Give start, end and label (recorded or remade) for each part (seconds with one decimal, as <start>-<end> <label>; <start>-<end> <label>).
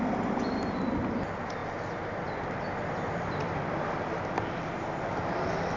0.0-1.6 recorded; 1.6-5.1 remade; 5.1-5.8 recorded